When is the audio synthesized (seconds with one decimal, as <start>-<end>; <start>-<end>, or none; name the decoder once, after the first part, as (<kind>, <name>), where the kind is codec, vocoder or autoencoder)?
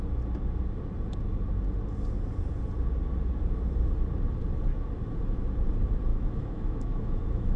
6.1-7.6 (autoencoder, DAC-VAE)